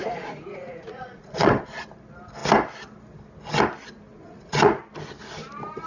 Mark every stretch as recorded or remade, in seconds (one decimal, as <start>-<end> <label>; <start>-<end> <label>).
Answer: 0.0-1.5 remade; 1.5-4.1 recorded; 4.1-4.8 remade; 4.8-5.9 recorded